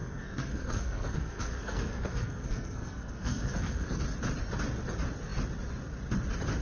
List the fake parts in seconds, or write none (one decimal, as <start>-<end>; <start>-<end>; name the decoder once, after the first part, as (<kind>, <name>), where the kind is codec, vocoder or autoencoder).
0.0-4.0 (codec, SNAC)